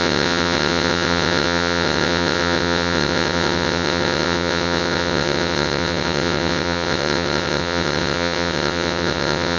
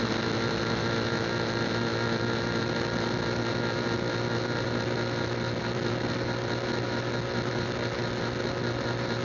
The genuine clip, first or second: second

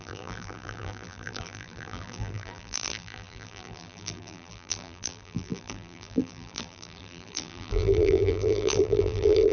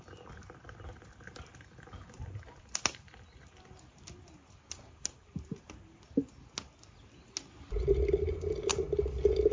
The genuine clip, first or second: second